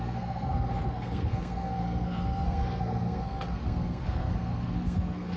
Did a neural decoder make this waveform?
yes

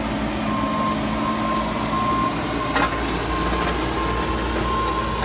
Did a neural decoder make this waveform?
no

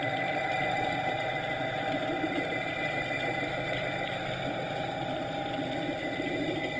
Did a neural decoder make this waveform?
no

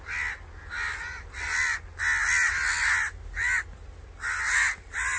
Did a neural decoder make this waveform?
no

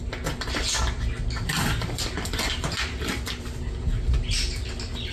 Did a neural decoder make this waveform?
no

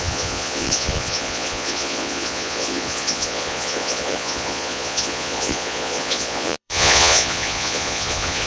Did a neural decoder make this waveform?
yes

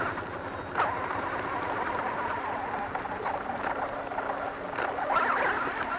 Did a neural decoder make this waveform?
no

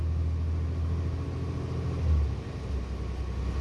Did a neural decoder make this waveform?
no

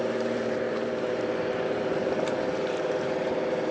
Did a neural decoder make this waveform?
yes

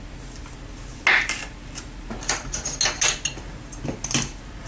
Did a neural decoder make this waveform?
no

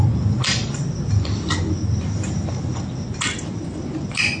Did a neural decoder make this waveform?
no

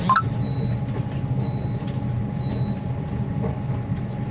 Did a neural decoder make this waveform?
no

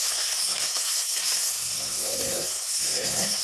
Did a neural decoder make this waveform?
yes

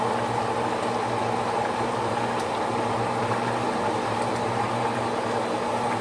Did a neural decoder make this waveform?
no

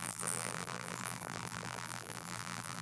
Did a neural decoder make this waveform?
yes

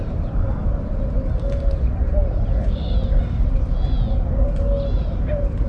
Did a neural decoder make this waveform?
no